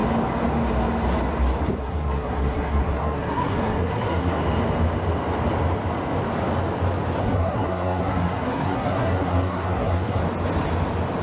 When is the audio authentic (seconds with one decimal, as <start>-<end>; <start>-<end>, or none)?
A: 0.0-1.8; 4.4-7.2; 10.2-11.2